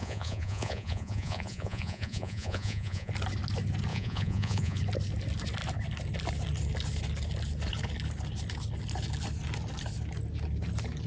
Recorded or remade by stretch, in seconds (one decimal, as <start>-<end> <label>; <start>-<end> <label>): 0.0-3.1 remade; 3.1-3.9 recorded; 3.9-4.8 remade; 4.8-11.1 recorded

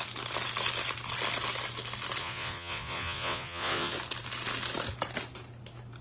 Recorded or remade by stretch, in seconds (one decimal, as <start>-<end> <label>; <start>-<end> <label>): 0.0-2.2 recorded; 2.2-3.9 remade; 3.9-6.0 recorded

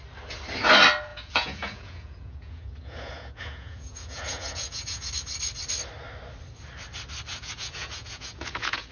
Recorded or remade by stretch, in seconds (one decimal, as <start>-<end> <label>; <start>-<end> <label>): 0.0-1.1 recorded; 1.1-5.1 remade; 5.1-7.3 recorded; 7.3-8.9 remade

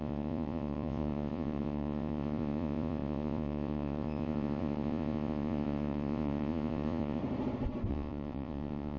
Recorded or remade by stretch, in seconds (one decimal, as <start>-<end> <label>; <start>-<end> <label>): 0.0-7.2 remade; 7.2-7.9 recorded; 7.9-9.0 remade

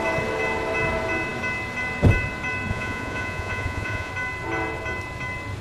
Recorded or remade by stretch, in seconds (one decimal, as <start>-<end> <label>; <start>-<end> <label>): 0.0-2.7 recorded; 2.7-4.1 remade; 4.1-5.6 recorded

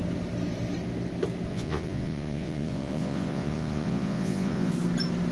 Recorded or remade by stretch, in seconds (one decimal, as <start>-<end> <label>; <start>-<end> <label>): 0.0-1.5 recorded; 1.5-4.7 remade; 4.7-5.3 recorded

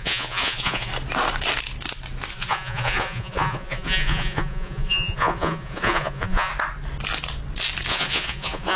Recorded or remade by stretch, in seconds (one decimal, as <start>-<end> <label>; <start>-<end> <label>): 0.0-0.9 remade; 0.9-2.3 recorded; 2.3-6.5 remade; 6.5-7.9 recorded; 7.9-8.8 remade

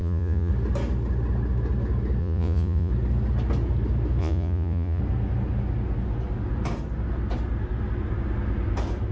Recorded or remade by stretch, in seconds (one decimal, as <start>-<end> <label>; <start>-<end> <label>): 0.0-0.5 remade; 0.5-2.2 recorded; 2.2-2.9 remade; 2.9-4.2 recorded; 4.2-5.0 remade; 5.0-9.1 recorded